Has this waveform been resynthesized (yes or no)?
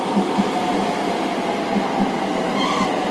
no